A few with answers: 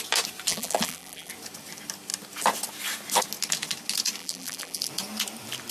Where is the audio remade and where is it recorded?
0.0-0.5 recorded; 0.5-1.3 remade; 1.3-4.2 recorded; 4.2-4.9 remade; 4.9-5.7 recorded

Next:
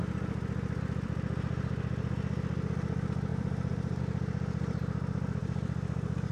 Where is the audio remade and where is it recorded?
0.0-3.3 recorded; 3.3-4.0 remade; 4.0-6.3 recorded